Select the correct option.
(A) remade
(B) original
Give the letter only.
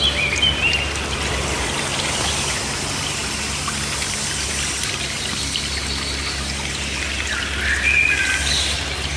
B